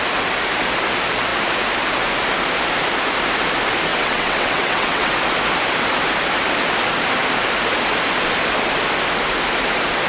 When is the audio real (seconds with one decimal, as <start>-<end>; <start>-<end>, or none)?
0.0-3.9; 5.1-10.1